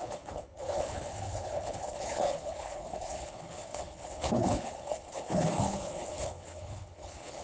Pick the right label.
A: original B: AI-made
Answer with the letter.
B